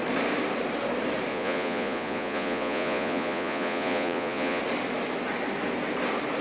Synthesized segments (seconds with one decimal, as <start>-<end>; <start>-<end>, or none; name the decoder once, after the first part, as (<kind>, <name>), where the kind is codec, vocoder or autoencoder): 1.3-4.6 (vocoder, Vocos)